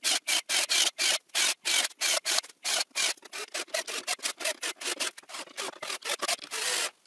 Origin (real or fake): real